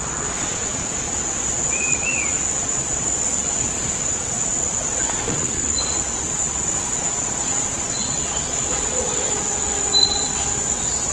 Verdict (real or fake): fake